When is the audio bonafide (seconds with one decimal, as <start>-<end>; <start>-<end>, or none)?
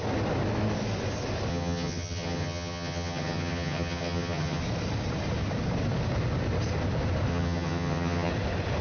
0.0-1.5; 4.6-7.3; 8.3-8.8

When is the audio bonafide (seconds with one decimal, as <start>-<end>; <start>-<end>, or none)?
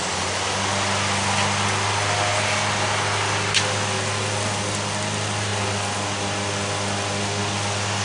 0.0-8.0